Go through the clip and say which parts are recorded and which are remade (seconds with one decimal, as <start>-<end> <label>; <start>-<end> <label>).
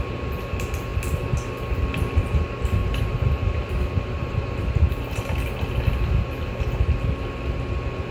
0.0-2.8 recorded; 2.8-5.2 remade; 5.2-8.1 recorded